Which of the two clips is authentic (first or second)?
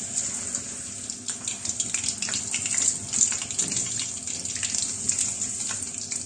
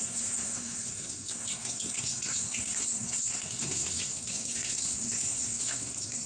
first